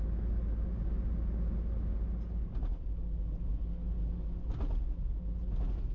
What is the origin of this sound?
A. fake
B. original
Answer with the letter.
B